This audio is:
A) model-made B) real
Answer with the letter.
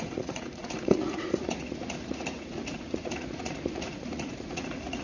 A